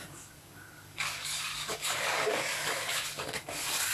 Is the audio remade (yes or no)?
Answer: yes